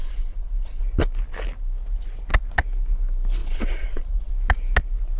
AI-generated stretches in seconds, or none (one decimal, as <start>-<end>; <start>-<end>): 0.0-0.8; 3.4-4.3